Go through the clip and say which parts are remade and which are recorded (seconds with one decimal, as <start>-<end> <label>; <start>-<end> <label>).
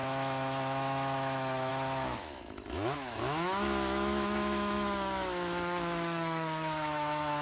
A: 0.0-7.4 remade